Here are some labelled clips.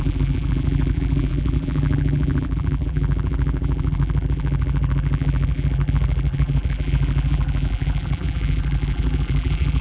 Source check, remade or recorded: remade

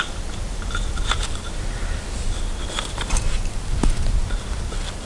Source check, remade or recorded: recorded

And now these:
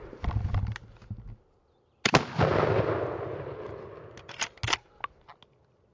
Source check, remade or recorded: recorded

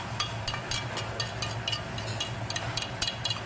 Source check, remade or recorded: recorded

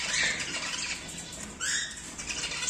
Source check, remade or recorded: recorded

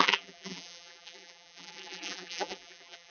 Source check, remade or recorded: remade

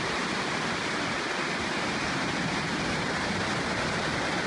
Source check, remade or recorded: recorded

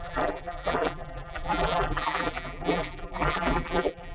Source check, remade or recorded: remade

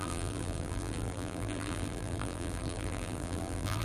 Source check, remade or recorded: remade